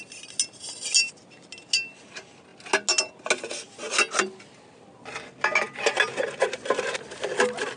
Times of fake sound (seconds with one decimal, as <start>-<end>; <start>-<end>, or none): none